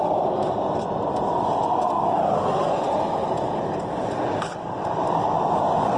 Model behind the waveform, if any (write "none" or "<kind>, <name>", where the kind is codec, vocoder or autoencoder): none